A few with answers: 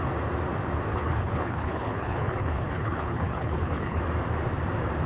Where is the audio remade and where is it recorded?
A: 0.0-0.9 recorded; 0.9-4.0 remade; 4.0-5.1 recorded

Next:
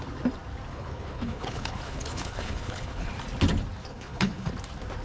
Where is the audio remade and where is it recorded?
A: 0.0-0.7 recorded; 0.7-3.1 remade; 3.1-3.9 recorded; 3.9-4.5 remade; 4.5-5.0 recorded

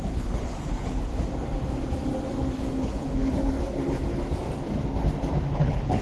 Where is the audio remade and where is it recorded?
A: 0.0-1.1 remade; 1.1-2.7 recorded; 2.7-4.2 remade; 4.2-5.5 recorded; 5.5-6.0 remade